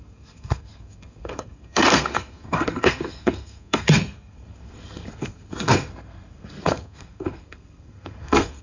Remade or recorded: remade